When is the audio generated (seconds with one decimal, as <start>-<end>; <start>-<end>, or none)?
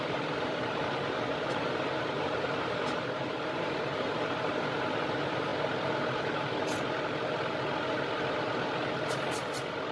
0.0-5.5